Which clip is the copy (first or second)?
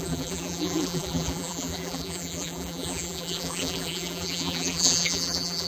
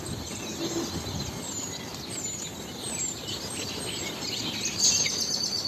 first